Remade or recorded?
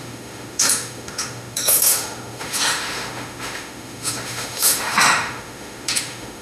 remade